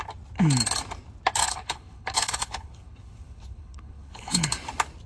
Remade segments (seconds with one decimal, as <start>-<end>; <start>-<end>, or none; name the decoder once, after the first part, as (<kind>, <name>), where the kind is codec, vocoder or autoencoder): 1.4-4.5 (codec, HILCodec)